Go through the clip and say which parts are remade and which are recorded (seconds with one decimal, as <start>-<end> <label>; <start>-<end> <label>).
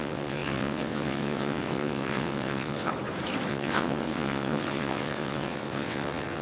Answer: 0.0-2.9 remade; 2.9-3.5 recorded; 3.5-6.4 remade